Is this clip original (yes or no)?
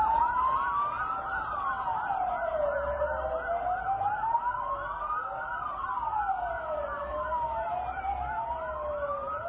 yes